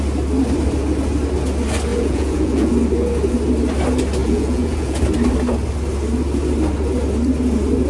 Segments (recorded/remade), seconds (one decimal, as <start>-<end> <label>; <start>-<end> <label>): 0.0-1.9 recorded; 1.9-2.7 remade; 2.7-4.2 recorded; 4.2-5.0 remade; 5.0-7.9 recorded